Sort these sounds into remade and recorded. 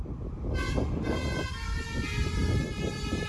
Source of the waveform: recorded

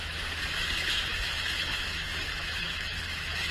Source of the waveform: remade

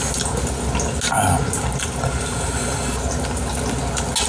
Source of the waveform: recorded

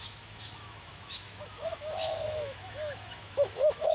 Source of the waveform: remade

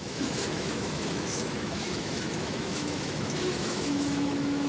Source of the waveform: remade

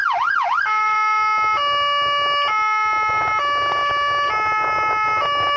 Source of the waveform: recorded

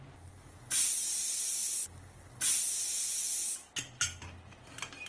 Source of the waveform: recorded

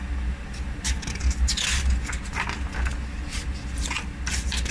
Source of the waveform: recorded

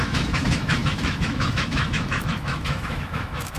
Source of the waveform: remade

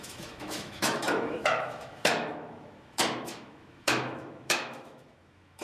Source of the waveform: remade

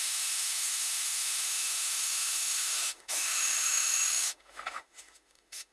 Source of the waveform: remade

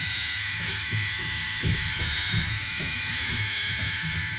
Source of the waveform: remade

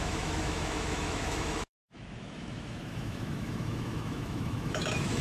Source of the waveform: remade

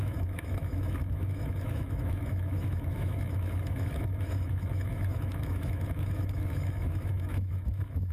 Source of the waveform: remade